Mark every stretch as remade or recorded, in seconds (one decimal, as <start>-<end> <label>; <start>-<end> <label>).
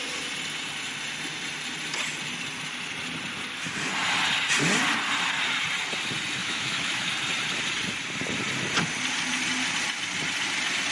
0.0-6.4 recorded; 6.4-7.1 remade; 7.1-10.9 recorded